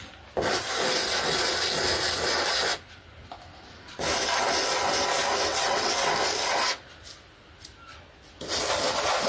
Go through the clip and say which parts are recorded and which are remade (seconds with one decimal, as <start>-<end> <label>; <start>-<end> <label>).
0.0-5.5 recorded; 5.5-6.1 remade; 6.1-9.3 recorded